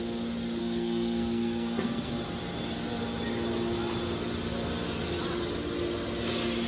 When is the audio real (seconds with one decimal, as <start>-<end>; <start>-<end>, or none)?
0.0-0.6; 2.1-6.7